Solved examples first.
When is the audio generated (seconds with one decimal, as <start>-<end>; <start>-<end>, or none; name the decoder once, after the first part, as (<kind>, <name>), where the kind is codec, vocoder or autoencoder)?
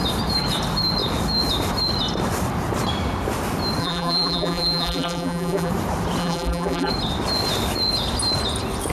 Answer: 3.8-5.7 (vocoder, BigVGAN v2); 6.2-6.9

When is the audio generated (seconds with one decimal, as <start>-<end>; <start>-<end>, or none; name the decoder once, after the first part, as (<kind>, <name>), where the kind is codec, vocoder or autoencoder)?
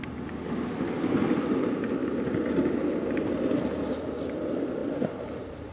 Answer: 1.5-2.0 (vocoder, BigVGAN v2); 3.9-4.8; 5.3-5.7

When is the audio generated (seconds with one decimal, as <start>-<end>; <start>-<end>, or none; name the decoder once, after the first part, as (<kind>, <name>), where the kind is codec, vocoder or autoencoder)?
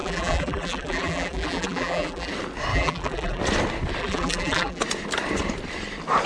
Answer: 0.0-2.3 (vocoder, BigVGAN v2); 2.7-3.4; 4.0-4.8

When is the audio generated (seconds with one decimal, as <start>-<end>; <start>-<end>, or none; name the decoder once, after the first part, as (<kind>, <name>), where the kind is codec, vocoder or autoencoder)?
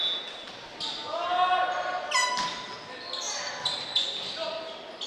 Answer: none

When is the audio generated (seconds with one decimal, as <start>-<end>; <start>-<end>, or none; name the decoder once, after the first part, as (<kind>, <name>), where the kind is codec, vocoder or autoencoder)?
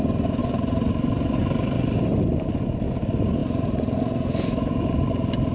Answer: 0.4-2.5 (vocoder, BigVGAN v2)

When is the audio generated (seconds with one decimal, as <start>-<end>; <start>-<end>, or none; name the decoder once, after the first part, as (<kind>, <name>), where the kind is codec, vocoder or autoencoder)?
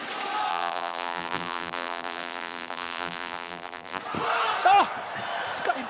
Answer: 0.5-4.0 (vocoder, BigVGAN v2)